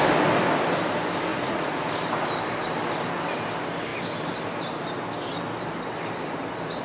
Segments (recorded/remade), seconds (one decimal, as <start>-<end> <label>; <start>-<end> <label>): 0.0-1.3 recorded; 1.3-1.9 remade; 1.9-6.8 recorded